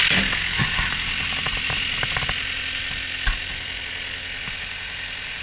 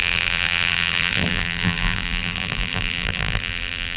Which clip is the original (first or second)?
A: first